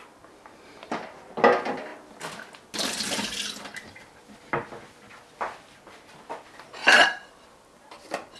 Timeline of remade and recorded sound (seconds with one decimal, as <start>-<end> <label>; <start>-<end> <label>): 0.0-8.4 recorded